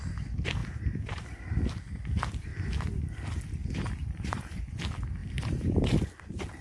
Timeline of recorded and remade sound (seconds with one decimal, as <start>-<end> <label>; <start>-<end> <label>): 0.0-0.6 recorded; 0.6-1.7 remade; 1.7-3.6 recorded; 3.6-4.8 remade; 4.8-5.2 recorded; 5.2-5.9 remade; 5.9-6.6 recorded